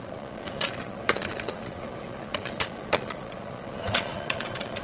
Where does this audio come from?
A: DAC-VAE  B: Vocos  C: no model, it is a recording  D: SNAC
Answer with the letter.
B